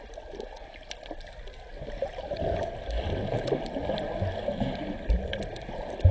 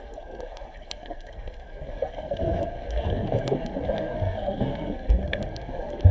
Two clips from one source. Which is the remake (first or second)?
second